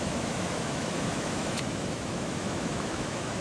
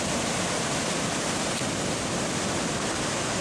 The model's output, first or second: first